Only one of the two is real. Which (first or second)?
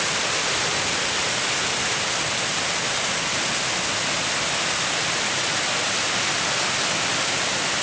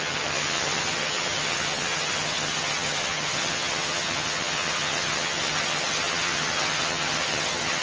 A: first